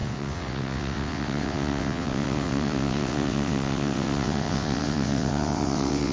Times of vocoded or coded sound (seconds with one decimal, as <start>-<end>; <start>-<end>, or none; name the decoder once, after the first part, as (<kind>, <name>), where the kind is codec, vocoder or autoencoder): 0.0-6.1 (vocoder, WaveNeXt)